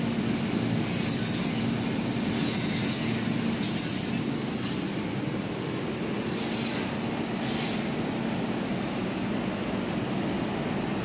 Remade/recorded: recorded